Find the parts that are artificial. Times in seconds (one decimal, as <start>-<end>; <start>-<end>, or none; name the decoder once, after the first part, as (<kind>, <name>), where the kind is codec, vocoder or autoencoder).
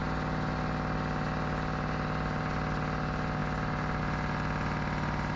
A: none